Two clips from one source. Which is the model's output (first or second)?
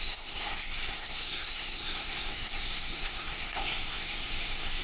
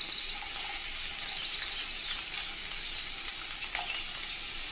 first